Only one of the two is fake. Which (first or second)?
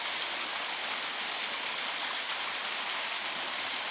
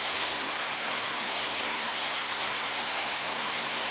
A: second